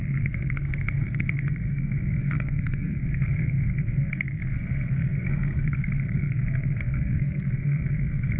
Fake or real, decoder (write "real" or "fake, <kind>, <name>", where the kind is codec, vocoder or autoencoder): fake, codec, SNAC